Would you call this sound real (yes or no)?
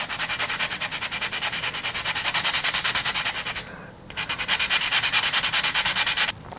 yes